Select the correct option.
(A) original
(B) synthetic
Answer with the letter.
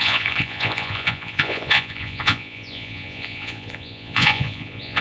B